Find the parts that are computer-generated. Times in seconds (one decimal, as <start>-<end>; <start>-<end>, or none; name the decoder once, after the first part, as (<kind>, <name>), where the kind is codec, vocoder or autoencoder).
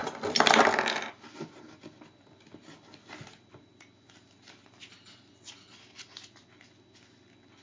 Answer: none